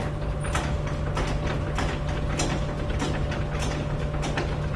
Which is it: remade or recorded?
recorded